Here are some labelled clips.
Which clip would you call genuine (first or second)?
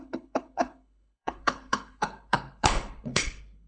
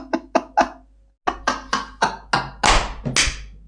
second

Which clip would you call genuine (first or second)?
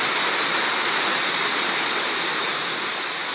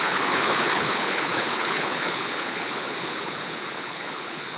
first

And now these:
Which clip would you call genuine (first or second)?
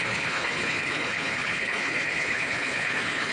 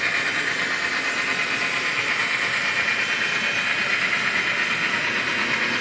second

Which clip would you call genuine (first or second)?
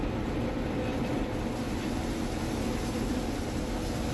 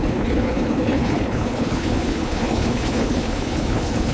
first